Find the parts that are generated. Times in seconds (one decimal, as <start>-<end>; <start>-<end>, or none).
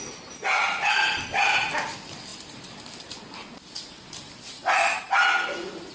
none